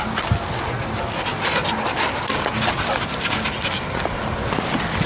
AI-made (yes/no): no